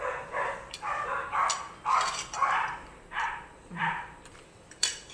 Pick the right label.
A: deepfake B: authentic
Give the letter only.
A